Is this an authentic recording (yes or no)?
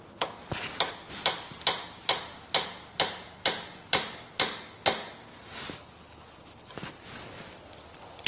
yes